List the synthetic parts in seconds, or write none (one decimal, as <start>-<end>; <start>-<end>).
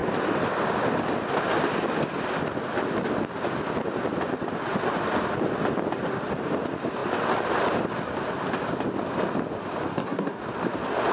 9.9-10.4